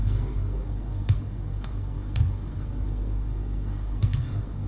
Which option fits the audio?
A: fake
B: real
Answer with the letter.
A